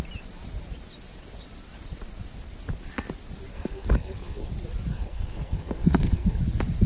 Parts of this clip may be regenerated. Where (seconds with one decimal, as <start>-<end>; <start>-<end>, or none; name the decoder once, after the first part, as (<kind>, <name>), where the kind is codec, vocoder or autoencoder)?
3.5-4.5 (codec, SNAC); 4.9-6.4

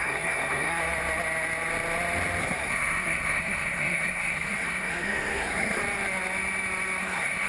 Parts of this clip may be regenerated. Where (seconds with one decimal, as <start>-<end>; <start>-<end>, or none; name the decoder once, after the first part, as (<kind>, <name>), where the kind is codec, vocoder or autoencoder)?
0.0-0.8 (codec, SNAC); 2.4-5.8; 7.0-7.5

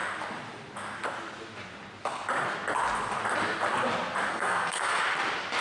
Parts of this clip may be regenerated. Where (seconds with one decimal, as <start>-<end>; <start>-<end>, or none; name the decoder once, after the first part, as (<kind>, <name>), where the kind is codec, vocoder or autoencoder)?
4.3-5.0 (codec, SNAC)

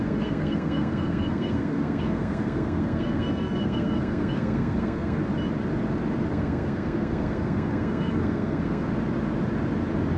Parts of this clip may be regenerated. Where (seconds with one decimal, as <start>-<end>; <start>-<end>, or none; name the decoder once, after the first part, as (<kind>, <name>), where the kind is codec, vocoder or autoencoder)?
0.0-5.2 (codec, SNAC); 6.3-8.9

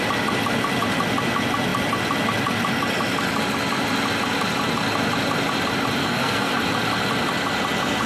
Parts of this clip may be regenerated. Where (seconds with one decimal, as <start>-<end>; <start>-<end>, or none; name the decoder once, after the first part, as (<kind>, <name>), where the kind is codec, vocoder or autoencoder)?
6.0-6.5 (codec, SNAC)

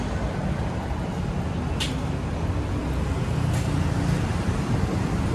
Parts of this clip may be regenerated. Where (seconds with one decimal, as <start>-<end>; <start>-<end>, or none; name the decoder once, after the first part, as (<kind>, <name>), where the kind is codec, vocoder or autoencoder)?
none

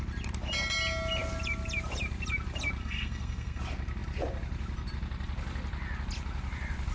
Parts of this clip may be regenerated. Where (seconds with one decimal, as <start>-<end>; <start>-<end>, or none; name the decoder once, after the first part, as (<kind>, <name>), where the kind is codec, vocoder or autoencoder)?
2.8-3.6 (codec, SNAC)

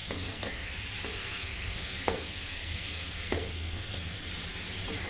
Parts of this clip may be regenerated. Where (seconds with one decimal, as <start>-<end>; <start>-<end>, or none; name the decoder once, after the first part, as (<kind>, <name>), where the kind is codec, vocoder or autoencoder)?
0.0-0.7 (codec, SNAC); 1.2-4.3